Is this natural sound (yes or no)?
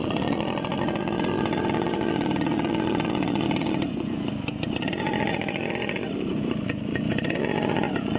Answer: no